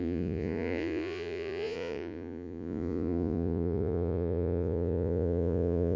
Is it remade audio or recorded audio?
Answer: remade